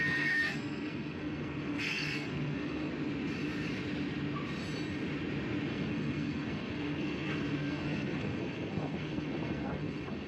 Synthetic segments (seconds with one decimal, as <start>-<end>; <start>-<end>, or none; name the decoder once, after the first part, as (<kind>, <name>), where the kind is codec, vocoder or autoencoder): 0.0-2.9 (codec, SNAC); 5.7-10.3